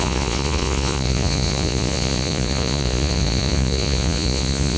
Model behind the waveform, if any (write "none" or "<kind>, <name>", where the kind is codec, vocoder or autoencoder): vocoder, Vocos